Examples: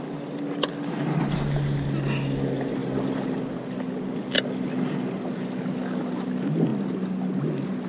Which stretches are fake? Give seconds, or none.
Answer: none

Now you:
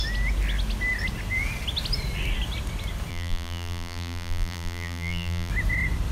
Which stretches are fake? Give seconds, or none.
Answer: 3.1-5.5 (vocoder, BigVGAN v2)

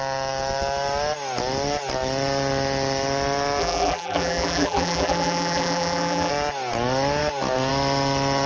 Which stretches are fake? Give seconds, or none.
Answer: 3.6-6.3 (vocoder, BigVGAN v2)

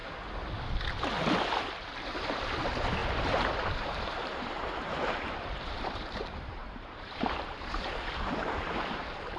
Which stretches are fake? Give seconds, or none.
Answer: 1.6-9.4 (vocoder, BigVGAN v2)